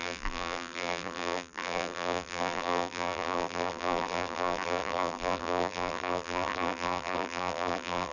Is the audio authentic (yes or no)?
no